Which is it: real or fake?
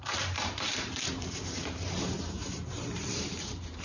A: fake